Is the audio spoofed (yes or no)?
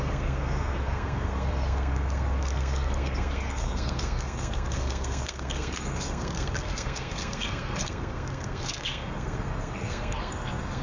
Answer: yes